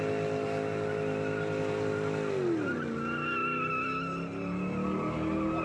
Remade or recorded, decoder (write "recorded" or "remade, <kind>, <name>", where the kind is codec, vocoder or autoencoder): recorded